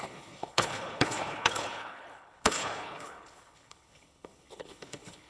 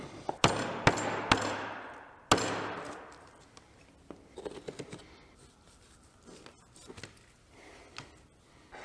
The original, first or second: second